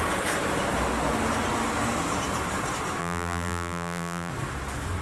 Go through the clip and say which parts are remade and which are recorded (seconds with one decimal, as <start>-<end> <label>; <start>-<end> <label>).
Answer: 0.0-3.0 recorded; 3.0-4.3 remade; 4.3-5.0 recorded